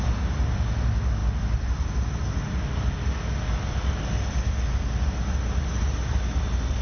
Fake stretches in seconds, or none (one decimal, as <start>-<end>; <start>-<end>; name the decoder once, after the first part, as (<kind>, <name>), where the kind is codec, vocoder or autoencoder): none